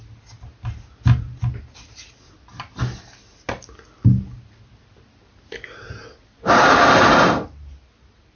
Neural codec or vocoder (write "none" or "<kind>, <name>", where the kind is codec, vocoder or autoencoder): none